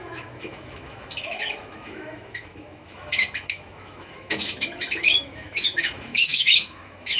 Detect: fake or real fake